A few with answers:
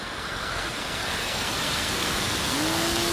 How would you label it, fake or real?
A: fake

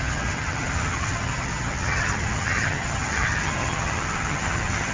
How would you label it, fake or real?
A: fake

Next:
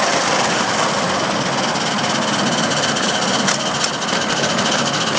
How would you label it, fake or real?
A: real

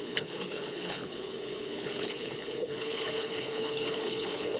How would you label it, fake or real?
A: fake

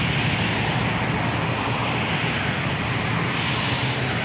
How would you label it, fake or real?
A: real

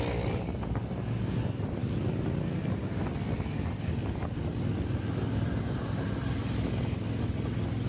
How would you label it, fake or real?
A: real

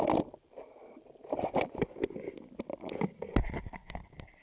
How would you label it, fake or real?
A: real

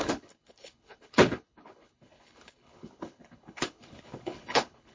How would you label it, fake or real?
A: fake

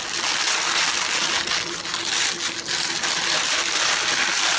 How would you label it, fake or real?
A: real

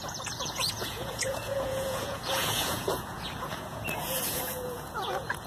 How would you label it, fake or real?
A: fake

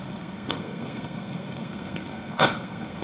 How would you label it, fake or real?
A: fake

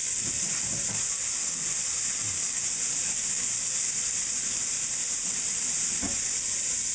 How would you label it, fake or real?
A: real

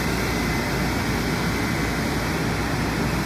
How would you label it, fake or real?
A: real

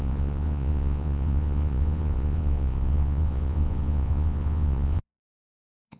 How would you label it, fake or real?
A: fake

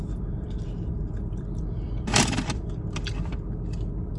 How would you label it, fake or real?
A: fake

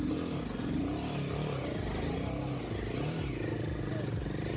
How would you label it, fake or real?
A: real